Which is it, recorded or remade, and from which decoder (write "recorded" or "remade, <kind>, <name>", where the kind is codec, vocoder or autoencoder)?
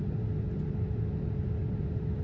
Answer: recorded